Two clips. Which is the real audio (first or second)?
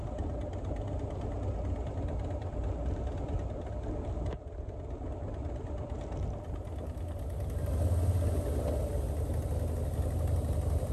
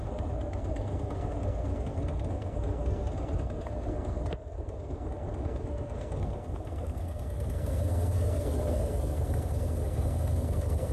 first